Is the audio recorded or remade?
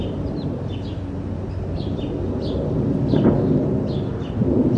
recorded